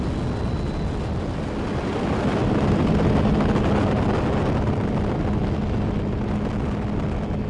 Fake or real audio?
real